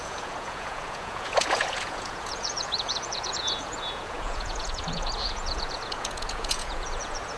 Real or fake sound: fake